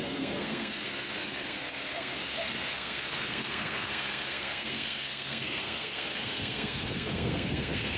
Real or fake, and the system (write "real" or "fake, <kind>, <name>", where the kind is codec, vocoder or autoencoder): fake, codec, SNAC